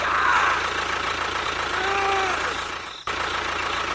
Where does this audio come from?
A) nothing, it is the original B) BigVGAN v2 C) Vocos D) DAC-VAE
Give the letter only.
A